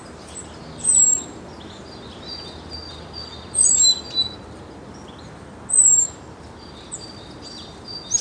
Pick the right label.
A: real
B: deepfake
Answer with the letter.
A